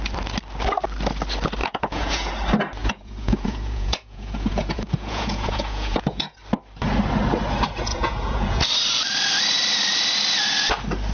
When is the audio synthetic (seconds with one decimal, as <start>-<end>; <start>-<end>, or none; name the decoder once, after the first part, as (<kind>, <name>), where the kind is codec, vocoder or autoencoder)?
1.6-2.3 (vocoder, Vocos); 2.8-6.4; 7.9-8.6